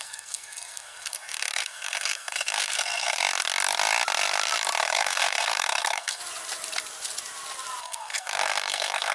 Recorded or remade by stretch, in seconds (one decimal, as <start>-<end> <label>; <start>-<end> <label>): 0.0-3.2 remade; 3.2-4.8 recorded; 4.8-6.2 remade; 6.2-7.8 recorded; 7.8-9.1 remade